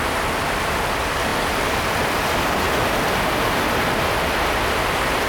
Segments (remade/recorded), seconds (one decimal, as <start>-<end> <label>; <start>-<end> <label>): 0.0-5.3 recorded